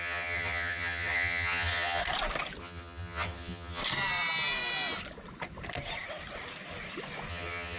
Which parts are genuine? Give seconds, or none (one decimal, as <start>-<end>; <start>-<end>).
2.0-2.6; 3.8-7.3